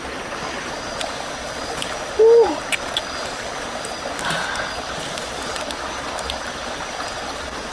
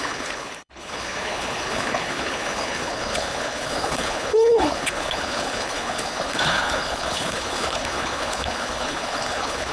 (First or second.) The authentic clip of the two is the first